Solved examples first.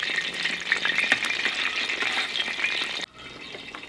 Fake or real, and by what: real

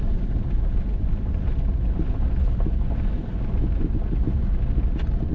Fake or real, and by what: real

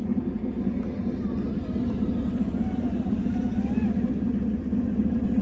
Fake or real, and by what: real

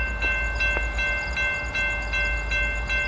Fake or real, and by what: real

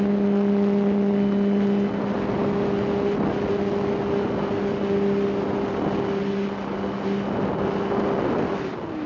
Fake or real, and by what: real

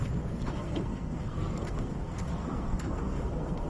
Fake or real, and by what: fake, codec, SNAC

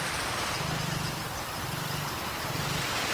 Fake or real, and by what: fake, vocoder, BigVGAN v2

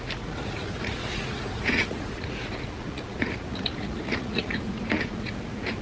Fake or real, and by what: fake, vocoder, Vocos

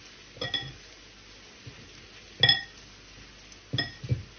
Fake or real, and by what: real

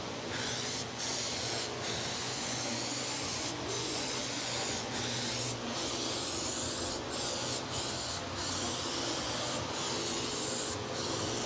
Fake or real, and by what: fake, vocoder, Vocos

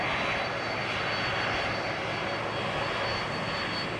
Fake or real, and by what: real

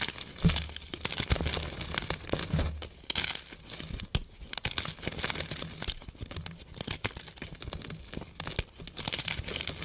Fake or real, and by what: real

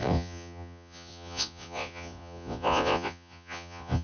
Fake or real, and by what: fake, vocoder, Vocos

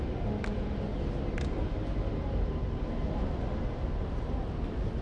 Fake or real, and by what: real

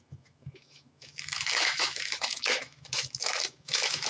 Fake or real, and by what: fake, autoencoder, DAC-VAE